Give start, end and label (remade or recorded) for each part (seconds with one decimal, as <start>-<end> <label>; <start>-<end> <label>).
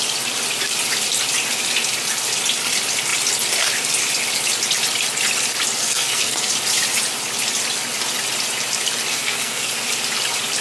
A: 0.0-5.8 recorded; 5.8-6.5 remade; 6.5-9.1 recorded; 9.1-9.7 remade; 9.7-10.6 recorded